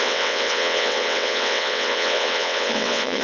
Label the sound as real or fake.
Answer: fake